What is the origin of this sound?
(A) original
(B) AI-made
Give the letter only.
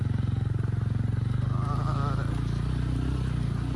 A